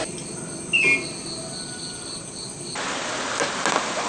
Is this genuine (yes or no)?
yes